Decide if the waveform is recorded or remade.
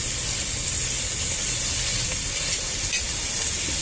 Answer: recorded